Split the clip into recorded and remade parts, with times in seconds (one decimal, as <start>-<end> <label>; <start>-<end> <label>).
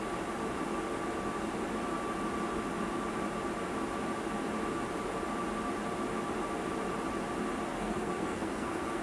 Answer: 0.0-7.7 recorded; 7.7-9.0 remade